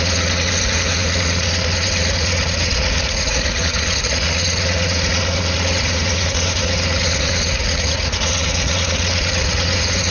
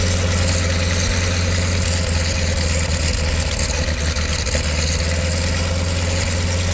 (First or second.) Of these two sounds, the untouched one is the second